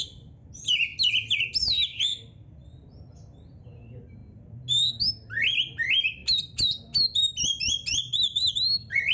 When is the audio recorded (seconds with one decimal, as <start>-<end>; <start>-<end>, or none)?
0.0-9.1